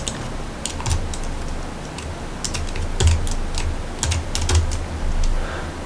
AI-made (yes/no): no